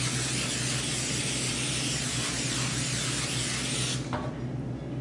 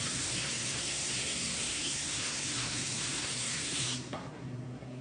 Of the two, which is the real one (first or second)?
first